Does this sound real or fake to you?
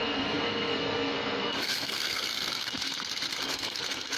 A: fake